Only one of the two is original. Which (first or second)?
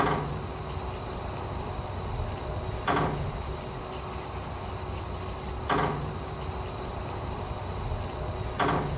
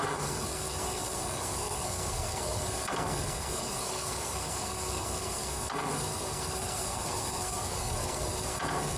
first